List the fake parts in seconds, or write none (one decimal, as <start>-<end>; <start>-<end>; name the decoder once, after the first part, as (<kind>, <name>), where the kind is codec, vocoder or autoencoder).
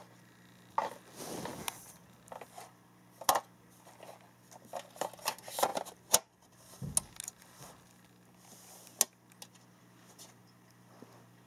none